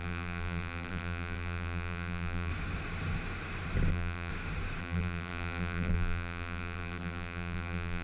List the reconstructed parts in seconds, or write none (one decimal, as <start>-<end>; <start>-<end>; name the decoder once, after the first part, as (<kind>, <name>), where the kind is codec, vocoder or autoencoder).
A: 0.0-2.5 (vocoder, BigVGAN v2); 3.9-4.3; 4.8-8.0